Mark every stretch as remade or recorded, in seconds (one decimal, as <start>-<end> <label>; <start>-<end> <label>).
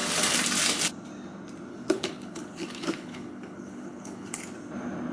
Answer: 0.0-1.7 recorded; 1.7-4.4 remade; 4.4-5.1 recorded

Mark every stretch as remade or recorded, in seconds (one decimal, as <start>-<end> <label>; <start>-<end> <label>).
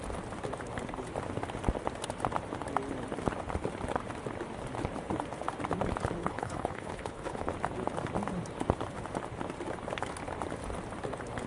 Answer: 0.0-6.2 recorded; 6.2-7.5 remade; 7.5-11.5 recorded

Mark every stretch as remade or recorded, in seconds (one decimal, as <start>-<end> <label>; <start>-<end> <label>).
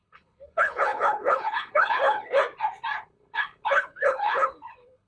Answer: 0.0-2.4 remade; 2.4-3.0 recorded; 3.0-5.1 remade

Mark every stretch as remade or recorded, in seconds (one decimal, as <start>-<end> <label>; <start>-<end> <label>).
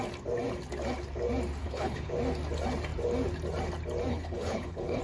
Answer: 0.0-1.6 recorded; 1.6-2.1 remade; 2.1-4.1 recorded; 4.1-5.0 remade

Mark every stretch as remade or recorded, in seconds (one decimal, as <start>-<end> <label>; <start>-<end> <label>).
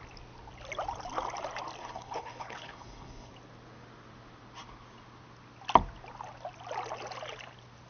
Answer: 0.0-1.8 recorded; 1.8-3.3 remade; 3.3-7.9 recorded